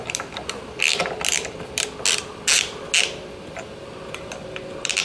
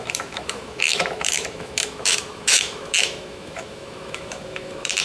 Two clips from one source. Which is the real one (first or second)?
first